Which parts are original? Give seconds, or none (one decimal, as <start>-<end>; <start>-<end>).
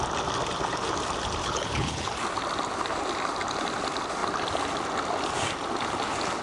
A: 0.0-1.4; 2.1-6.4